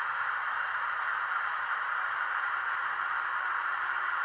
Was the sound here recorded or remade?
remade